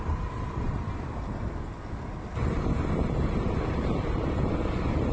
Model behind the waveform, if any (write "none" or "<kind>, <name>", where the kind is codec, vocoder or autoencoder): none